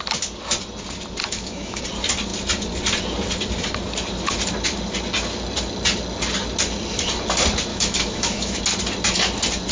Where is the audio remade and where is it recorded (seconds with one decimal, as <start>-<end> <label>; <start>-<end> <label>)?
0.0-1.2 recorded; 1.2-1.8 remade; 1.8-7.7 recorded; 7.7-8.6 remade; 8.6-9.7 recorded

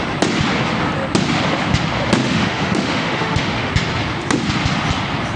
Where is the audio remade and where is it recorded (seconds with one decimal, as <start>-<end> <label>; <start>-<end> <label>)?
0.0-2.2 recorded; 2.2-3.7 remade; 3.7-5.4 recorded

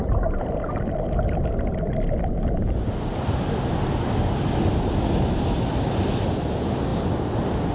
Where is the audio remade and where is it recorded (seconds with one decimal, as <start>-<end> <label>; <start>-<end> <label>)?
0.0-7.7 recorded

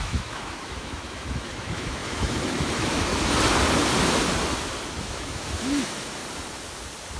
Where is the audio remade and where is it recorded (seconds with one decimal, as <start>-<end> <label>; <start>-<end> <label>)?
0.0-3.1 remade; 3.1-5.0 recorded; 5.0-6.2 remade; 6.2-7.2 recorded